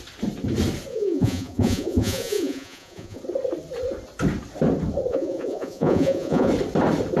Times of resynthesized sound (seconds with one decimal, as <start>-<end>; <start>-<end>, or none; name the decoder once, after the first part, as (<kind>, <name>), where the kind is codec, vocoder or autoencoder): 0.9-3.2 (vocoder, Vocos); 5.1-6.5